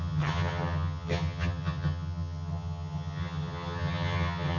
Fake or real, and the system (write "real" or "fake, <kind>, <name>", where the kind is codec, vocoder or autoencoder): fake, vocoder, HiFi-GAN